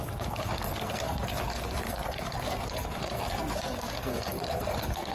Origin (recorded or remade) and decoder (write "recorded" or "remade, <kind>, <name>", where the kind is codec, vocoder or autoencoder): remade, codec, SNAC